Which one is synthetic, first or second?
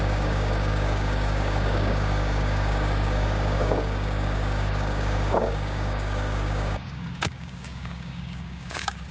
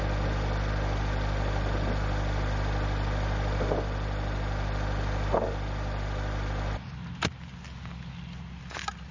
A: first